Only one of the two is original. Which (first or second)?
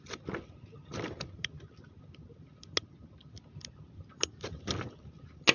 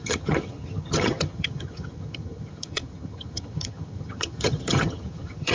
first